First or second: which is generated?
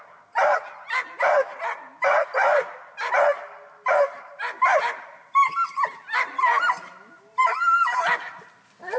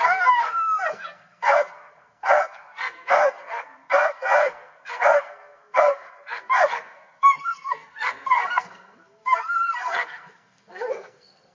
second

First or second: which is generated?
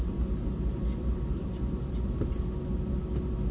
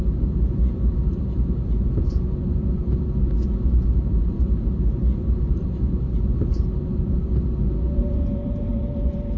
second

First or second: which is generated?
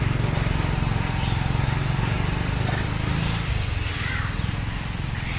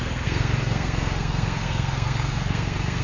second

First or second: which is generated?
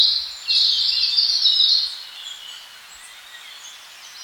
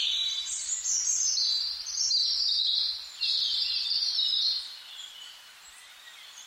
second